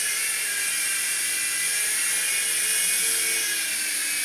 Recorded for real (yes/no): yes